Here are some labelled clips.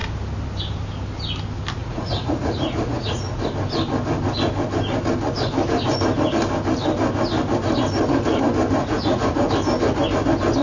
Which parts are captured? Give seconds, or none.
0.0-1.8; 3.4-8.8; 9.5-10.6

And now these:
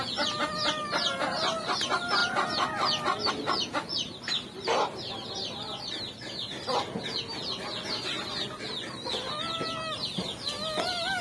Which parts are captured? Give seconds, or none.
0.0-11.2

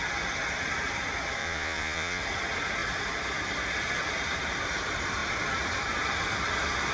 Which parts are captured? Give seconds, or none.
0.0-1.4; 2.2-6.9

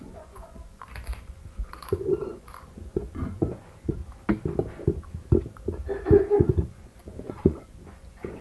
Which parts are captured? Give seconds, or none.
4.0-6.3

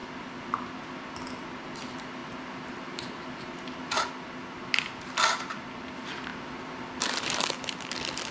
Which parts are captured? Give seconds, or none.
0.0-8.3

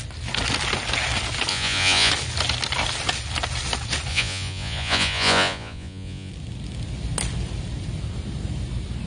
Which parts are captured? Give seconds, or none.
0.0-1.5; 2.1-4.1; 6.3-9.1